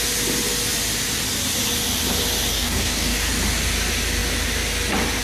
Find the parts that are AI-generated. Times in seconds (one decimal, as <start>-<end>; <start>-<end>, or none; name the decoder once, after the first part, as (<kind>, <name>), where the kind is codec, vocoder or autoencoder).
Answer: 2.5-3.3 (codec, DAC)